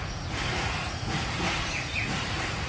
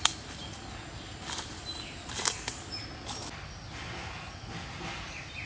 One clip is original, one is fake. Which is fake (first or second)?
first